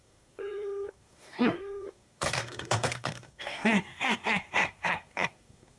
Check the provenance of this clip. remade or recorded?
remade